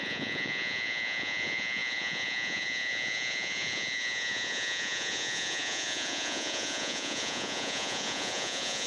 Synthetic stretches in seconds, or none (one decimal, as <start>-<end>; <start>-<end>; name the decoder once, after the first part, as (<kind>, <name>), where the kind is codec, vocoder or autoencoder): 0.0-8.9 (vocoder, Vocos)